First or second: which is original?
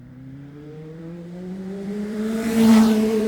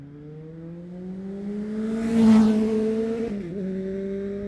second